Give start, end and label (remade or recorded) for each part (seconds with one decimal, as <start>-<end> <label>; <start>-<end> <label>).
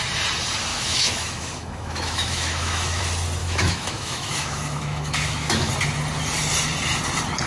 0.0-0.7 recorded; 0.7-3.0 remade; 3.0-3.4 recorded; 3.4-5.7 remade; 5.7-7.5 recorded